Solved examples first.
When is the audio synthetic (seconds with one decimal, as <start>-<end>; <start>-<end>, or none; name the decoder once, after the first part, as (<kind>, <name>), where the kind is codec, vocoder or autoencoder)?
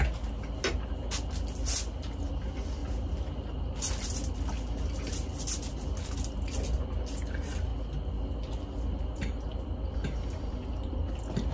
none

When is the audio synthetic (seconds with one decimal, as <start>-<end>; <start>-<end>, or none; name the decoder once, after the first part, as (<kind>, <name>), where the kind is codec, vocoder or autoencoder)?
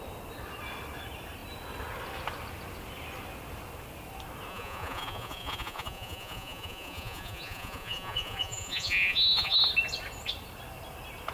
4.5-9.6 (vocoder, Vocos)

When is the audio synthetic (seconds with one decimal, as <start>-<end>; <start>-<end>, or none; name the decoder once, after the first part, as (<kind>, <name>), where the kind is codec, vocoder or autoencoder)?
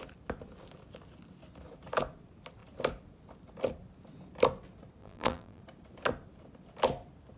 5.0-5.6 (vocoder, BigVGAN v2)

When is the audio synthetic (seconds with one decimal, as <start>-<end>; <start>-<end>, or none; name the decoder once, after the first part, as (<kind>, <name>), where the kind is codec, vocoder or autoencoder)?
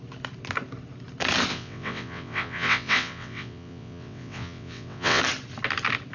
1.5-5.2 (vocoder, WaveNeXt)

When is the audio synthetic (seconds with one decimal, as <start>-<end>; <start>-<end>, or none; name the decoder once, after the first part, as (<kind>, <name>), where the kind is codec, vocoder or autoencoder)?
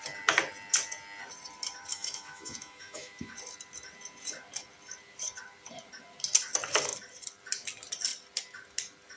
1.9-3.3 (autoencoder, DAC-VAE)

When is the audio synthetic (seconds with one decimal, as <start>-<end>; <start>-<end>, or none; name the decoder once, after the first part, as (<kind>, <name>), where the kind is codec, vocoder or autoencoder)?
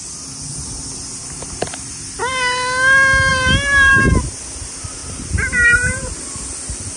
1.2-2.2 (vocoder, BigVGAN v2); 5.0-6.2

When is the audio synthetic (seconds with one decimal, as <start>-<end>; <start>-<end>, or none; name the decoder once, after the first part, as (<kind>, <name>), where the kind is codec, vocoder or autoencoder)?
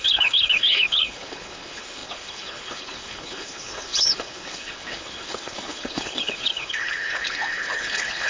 0.0-8.3 (codec, HILCodec)